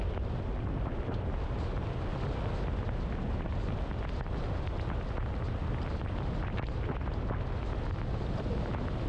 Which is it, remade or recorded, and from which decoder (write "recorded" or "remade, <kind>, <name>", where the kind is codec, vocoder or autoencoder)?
recorded